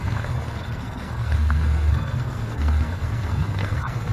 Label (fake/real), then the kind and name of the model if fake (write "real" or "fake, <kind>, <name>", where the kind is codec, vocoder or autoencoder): fake, codec, SNAC